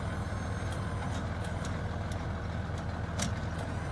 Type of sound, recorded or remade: recorded